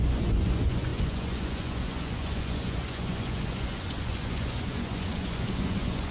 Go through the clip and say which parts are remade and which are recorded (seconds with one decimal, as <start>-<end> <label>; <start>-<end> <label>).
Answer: 0.0-6.1 remade